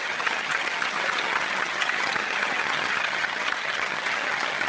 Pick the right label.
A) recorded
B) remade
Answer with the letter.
B